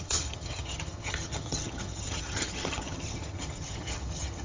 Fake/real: fake